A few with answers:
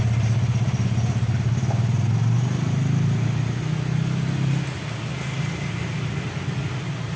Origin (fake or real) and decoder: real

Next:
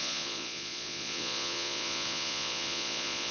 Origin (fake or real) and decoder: fake, vocoder, Vocos